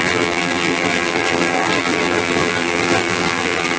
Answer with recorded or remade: remade